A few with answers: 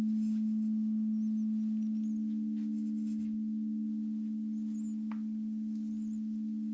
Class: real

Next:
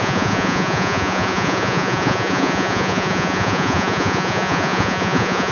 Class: fake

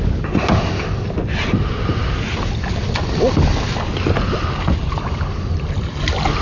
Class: real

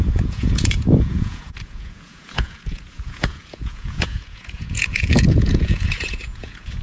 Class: fake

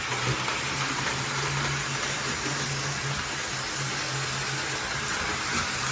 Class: real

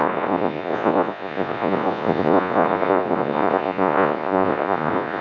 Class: fake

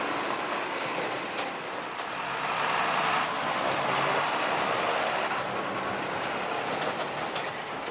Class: real